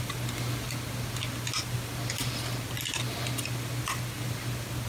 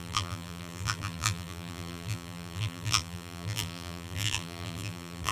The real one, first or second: first